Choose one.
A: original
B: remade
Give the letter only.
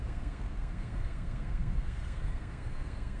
B